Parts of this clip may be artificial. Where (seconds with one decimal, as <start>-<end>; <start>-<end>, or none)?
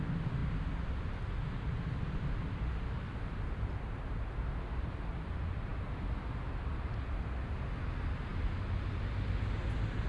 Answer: none